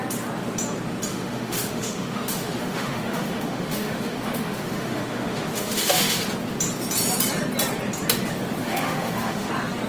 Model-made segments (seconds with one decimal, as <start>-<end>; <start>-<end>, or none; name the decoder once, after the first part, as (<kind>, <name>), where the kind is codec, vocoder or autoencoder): 1.1-6.2 (autoencoder, DAC-VAE); 8.6-9.5